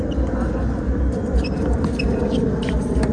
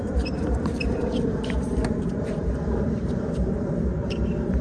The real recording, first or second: first